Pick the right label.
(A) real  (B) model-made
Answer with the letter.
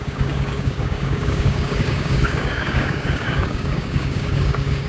B